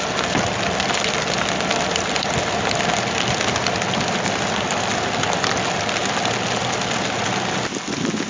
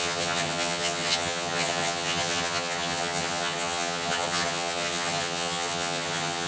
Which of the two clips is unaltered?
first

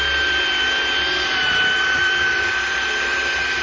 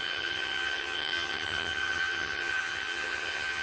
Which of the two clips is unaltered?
first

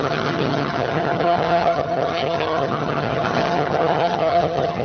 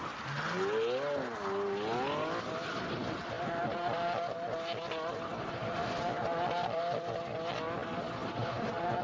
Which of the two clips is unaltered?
second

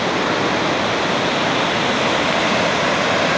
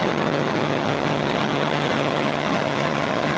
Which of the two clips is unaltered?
first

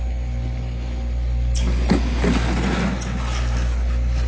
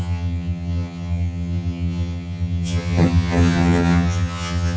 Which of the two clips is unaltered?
first